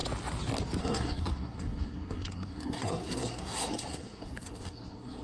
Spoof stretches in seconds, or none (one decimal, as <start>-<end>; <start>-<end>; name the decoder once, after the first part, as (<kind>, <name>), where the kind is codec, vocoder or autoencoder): 0.8-5.2 (codec, SNAC)